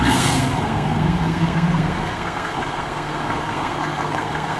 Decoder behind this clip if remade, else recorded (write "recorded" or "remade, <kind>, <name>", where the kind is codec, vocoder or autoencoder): remade, codec, SNAC